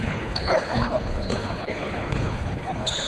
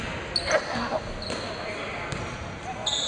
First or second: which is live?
second